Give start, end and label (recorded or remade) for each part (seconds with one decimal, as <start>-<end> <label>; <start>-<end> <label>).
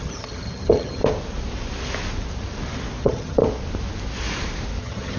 0.0-1.0 remade; 1.0-3.0 recorded; 3.0-3.4 remade; 3.4-4.8 recorded; 4.8-5.2 remade